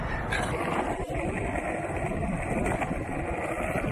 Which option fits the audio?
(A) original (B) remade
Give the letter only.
A